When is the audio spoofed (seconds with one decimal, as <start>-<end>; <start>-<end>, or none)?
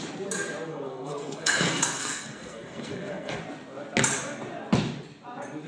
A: 0.7-3.4